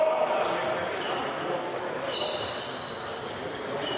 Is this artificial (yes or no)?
no